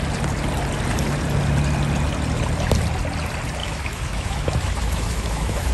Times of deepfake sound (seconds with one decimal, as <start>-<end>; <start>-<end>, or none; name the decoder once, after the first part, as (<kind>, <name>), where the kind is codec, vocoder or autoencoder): 3.6-5.7 (autoencoder, DAC-VAE)